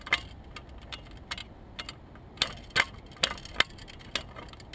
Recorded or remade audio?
recorded